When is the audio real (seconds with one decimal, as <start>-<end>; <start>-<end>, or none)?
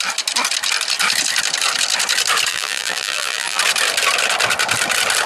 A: 0.0-2.5; 3.6-5.3